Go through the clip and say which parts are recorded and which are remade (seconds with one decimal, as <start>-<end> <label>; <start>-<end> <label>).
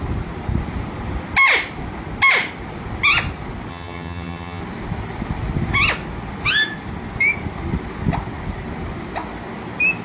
0.0-3.7 recorded; 3.7-4.6 remade; 4.6-10.0 recorded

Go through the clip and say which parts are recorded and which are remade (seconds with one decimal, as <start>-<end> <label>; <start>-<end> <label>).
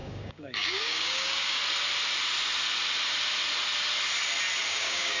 0.0-1.6 remade; 1.6-4.7 recorded; 4.7-5.2 remade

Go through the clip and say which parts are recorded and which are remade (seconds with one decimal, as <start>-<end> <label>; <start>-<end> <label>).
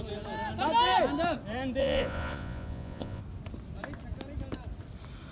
0.0-1.8 recorded; 1.8-3.2 remade; 3.2-5.3 recorded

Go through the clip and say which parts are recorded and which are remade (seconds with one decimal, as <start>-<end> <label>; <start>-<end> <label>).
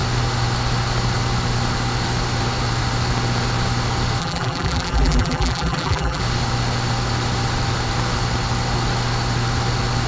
0.0-4.2 recorded; 4.2-6.2 remade; 6.2-10.1 recorded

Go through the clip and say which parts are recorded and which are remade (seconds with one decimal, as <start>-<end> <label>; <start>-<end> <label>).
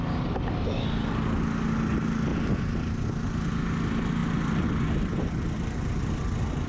0.0-6.7 recorded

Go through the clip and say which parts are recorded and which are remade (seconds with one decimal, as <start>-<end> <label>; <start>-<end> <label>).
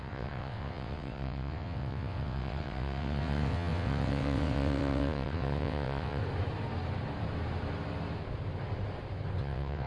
0.0-6.2 remade; 6.2-9.4 recorded; 9.4-9.9 remade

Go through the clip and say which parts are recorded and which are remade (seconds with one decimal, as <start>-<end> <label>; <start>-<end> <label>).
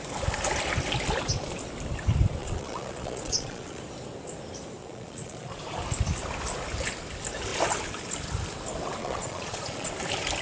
0.0-2.4 recorded; 2.4-3.8 remade; 3.8-4.8 recorded; 4.8-5.6 remade; 5.6-9.0 recorded; 9.0-9.9 remade; 9.9-10.4 recorded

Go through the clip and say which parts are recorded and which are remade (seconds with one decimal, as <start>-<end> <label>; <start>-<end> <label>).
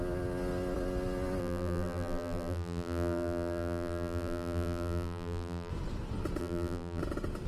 0.0-1.4 recorded; 1.4-5.7 remade; 5.7-6.4 recorded; 6.4-7.0 remade; 7.0-7.5 recorded